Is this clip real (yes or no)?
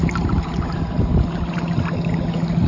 yes